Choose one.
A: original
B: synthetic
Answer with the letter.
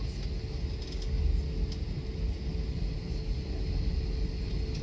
A